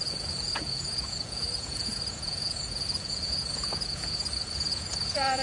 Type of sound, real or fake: fake